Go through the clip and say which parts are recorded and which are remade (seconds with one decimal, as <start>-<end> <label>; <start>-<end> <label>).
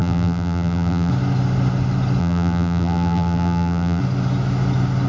0.0-1.1 remade; 1.1-2.2 recorded; 2.2-4.0 remade; 4.0-5.1 recorded